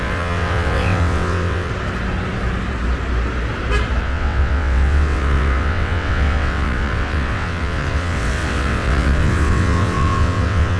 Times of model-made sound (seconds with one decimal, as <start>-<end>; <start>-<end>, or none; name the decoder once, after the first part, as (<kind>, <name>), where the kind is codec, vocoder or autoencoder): 0.0-1.7 (vocoder, WaveNeXt); 4.0-10.8